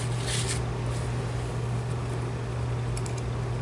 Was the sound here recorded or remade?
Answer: recorded